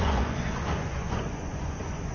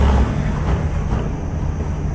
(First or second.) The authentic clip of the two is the second